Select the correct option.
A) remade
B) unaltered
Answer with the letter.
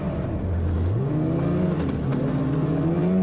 B